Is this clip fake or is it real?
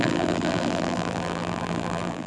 fake